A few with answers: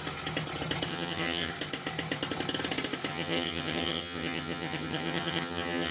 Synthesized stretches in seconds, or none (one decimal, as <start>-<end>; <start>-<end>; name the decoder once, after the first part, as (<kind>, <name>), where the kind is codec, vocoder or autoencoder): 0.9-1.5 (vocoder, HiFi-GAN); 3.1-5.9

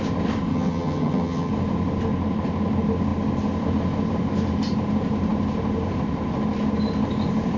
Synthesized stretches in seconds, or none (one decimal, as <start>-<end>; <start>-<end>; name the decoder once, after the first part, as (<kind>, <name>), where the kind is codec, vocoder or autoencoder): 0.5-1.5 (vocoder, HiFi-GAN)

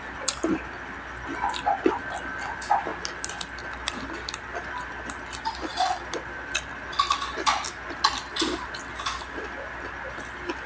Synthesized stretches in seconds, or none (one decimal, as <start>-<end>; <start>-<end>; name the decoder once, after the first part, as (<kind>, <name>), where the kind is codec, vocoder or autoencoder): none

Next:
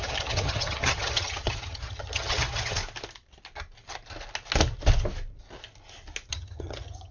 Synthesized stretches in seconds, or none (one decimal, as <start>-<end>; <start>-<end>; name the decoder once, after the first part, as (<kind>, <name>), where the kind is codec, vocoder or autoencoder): 0.0-2.8 (vocoder, HiFi-GAN); 6.3-7.1

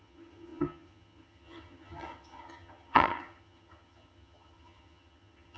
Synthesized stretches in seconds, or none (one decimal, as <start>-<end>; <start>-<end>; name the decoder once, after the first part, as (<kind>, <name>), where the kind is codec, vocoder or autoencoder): 0.0-5.6 (vocoder, HiFi-GAN)